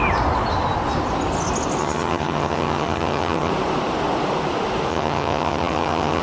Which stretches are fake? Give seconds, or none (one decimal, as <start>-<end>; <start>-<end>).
1.8-3.5; 4.9-6.2